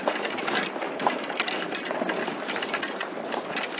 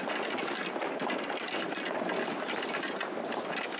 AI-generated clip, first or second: first